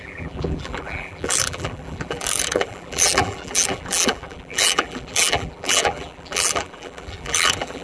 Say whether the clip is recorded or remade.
remade